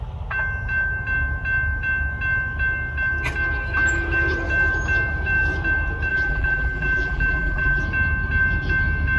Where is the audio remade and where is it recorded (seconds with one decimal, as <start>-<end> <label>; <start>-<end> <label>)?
0.0-6.1 recorded; 6.1-7.8 remade; 7.8-9.2 recorded